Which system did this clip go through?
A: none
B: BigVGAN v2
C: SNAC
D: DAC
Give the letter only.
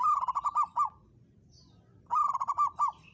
A